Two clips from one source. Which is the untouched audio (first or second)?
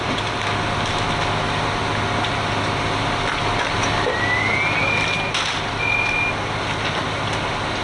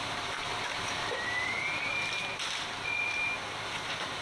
first